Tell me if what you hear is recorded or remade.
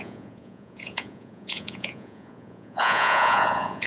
remade